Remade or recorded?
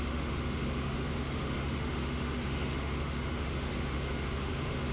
remade